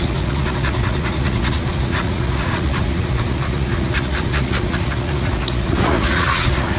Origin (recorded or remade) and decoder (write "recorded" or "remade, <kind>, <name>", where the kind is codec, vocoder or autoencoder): remade, vocoder, Vocos